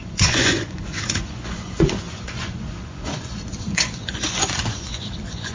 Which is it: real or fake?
fake